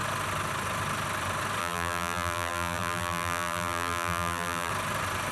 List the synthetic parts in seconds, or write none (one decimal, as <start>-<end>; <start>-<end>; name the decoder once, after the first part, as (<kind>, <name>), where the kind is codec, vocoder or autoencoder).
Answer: 1.6-4.7 (vocoder, BigVGAN v2)